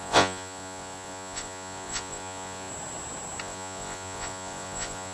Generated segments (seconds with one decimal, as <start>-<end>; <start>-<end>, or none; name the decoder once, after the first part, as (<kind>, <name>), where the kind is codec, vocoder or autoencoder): 0.0-2.7 (vocoder, Vocos); 3.4-5.1